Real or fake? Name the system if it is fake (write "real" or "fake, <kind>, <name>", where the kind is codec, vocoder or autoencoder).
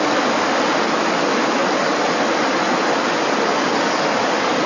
real